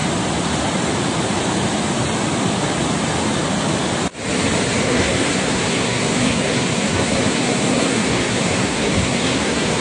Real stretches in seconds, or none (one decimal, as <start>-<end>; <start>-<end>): 0.0-4.8